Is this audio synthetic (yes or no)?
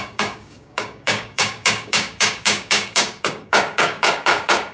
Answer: yes